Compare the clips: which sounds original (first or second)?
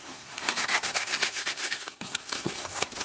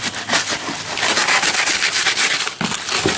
second